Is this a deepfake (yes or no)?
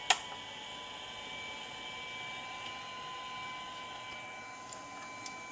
no